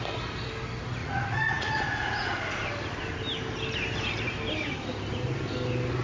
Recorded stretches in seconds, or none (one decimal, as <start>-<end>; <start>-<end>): 0.0-1.0; 2.5-6.0

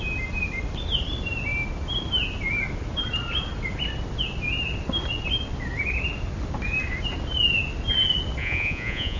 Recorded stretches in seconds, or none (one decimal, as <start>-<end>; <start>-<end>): 0.0-8.4

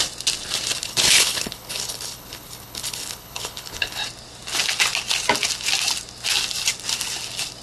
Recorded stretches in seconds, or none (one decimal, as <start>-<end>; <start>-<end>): 0.0-0.8; 4.0-7.6

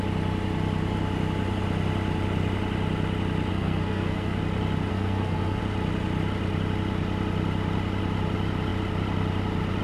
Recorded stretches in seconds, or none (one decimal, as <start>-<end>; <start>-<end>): 0.0-3.5; 4.4-4.9; 5.6-9.8

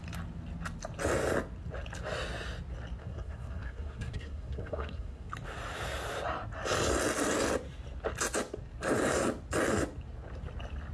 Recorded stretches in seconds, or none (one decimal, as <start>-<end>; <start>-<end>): 0.0-3.0; 5.3-10.9

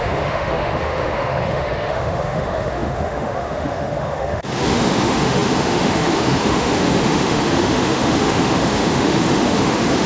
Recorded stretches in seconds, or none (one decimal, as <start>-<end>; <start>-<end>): none